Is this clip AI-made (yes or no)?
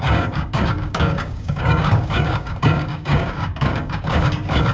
yes